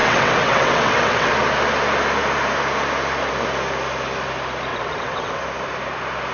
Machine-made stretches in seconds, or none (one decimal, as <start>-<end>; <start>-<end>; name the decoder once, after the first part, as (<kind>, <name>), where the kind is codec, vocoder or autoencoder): 0.0-1.3 (vocoder, WaveNeXt); 4.7-5.4